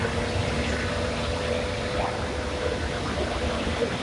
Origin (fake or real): real